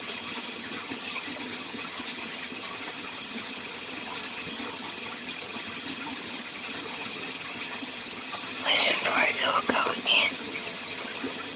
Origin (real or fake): fake